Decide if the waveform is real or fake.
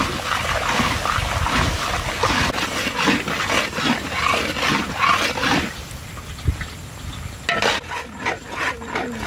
real